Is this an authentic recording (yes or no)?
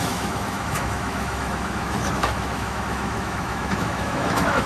no